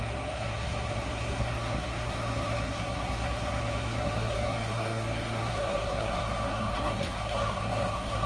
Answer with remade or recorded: remade